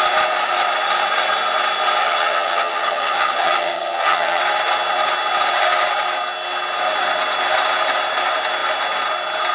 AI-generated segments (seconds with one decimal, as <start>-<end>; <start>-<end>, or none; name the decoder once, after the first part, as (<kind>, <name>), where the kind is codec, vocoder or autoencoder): 2.0-4.4 (vocoder, HiFi-GAN)